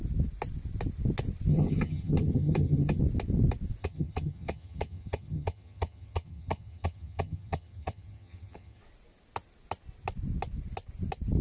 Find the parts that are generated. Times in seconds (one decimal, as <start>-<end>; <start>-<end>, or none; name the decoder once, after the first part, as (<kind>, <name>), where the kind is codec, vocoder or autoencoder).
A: 1.5-3.0 (vocoder, HiFi-GAN); 3.8-8.8